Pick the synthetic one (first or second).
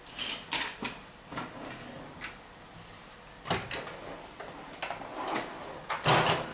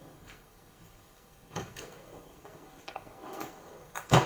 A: second